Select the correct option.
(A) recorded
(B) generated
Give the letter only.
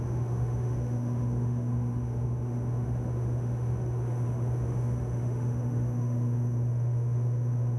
B